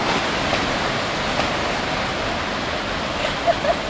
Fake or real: real